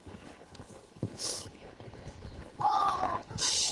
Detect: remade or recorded remade